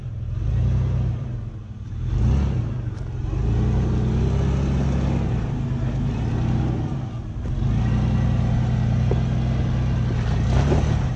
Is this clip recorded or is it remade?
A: recorded